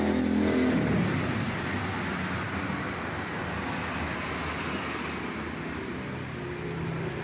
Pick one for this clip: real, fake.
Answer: real